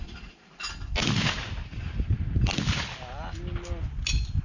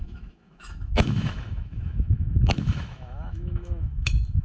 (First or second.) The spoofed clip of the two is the second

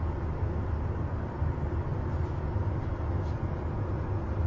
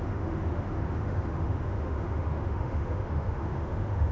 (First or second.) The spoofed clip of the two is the second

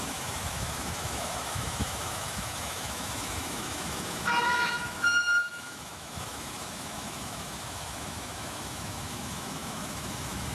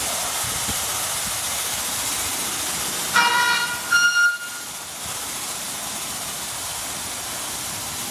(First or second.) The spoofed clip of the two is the first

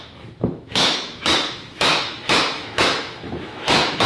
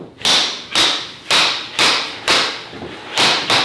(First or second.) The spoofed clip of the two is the first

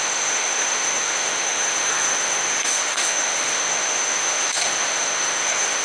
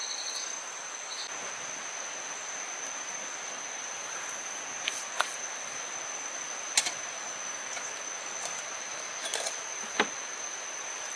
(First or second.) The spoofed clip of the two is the first